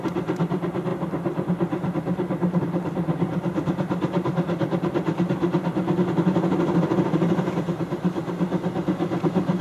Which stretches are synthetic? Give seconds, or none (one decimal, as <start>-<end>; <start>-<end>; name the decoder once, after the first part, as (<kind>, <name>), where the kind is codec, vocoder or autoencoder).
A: 3.3-4.9 (vocoder, BigVGAN v2)